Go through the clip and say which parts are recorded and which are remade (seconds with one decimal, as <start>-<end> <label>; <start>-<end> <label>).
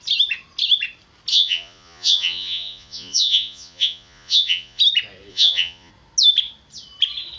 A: 0.0-1.3 recorded; 1.3-4.8 remade; 4.8-5.3 recorded; 5.3-5.9 remade; 5.9-7.4 recorded